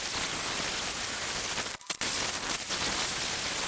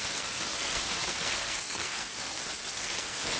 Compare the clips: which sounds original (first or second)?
first